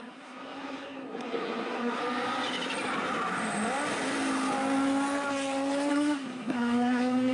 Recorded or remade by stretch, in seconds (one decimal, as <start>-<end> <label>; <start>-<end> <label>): 0.0-2.0 remade; 2.0-5.9 recorded; 5.9-7.3 remade